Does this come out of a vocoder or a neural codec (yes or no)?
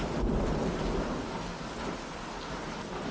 no